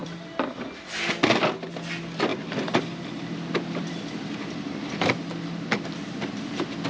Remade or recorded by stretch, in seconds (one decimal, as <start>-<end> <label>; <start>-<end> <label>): 0.0-0.6 remade; 0.6-2.3 recorded; 2.3-5.2 remade; 5.2-6.9 recorded